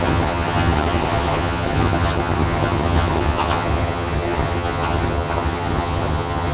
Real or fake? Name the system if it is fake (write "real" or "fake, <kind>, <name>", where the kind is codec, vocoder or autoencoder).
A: fake, vocoder, HiFi-GAN